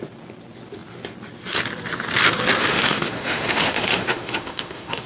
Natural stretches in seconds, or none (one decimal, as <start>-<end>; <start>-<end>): 0.0-2.6